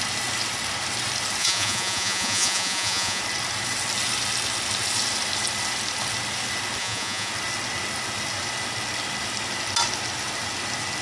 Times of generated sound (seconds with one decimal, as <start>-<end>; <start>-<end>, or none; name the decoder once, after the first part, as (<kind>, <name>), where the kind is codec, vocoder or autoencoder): 1.4-3.2 (vocoder, Vocos); 6.8-7.3